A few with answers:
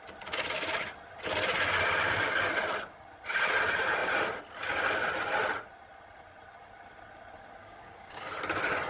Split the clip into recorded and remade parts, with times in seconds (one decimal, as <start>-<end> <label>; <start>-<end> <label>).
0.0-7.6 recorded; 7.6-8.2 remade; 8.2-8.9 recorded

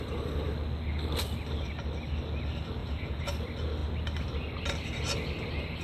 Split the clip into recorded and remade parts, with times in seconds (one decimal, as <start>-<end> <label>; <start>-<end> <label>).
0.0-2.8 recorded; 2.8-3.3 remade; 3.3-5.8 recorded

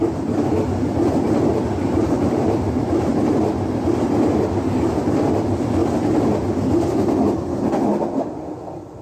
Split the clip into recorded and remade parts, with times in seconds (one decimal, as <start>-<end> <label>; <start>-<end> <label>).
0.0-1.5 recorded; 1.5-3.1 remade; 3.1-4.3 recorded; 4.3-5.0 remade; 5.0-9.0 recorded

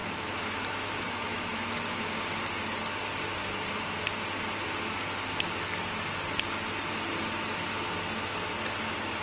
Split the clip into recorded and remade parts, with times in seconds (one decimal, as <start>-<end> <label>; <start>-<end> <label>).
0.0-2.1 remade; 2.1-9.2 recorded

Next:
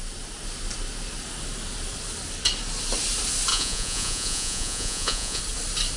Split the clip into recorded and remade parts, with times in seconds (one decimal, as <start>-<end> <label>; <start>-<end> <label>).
0.0-3.5 recorded; 3.5-5.4 remade; 5.4-6.0 recorded